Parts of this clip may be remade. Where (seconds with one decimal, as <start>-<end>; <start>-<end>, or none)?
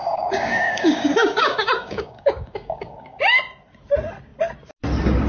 0.0-3.2